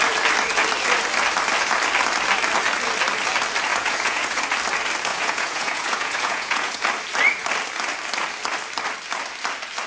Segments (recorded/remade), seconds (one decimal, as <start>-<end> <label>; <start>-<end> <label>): 0.0-3.7 recorded; 3.7-4.4 remade; 4.4-5.1 recorded; 5.1-6.8 remade; 6.8-9.9 recorded